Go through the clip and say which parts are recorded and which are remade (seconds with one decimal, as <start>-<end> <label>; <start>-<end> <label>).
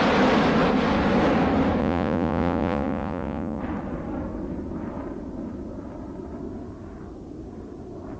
0.0-1.8 recorded; 1.8-3.6 remade; 3.6-8.2 recorded